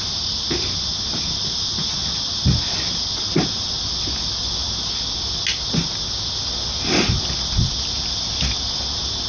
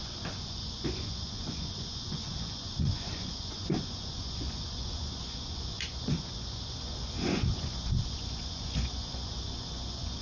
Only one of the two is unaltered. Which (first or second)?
first